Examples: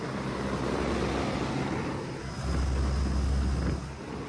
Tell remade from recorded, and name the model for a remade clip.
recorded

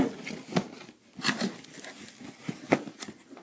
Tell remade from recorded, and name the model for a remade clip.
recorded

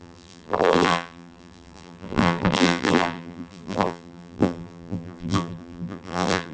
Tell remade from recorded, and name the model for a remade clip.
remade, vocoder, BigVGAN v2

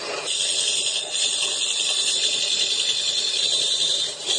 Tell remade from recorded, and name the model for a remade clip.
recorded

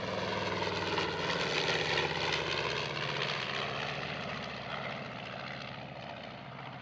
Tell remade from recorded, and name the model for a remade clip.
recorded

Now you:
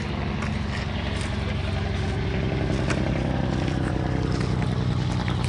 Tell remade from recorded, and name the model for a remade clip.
recorded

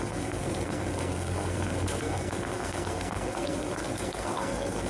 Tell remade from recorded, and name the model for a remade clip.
remade, codec, SNAC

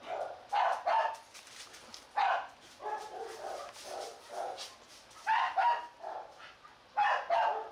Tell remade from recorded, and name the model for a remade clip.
recorded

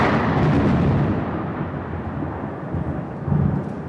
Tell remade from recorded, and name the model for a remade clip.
recorded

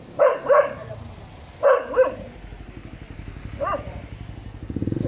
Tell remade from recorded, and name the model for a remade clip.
recorded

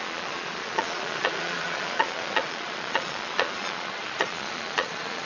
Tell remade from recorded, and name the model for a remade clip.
remade, vocoder, Vocos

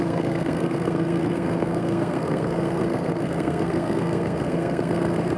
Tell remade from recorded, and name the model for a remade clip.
remade, codec, SNAC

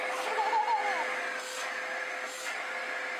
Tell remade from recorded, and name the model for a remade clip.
recorded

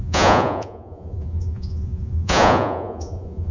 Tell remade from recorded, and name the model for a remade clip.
remade, vocoder, Vocos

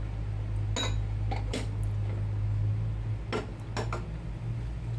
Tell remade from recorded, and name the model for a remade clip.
recorded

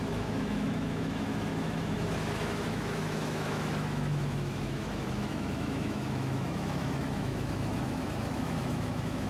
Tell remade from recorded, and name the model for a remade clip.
remade, autoencoder, DAC-VAE